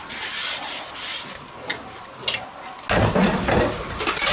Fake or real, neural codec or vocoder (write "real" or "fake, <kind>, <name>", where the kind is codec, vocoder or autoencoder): real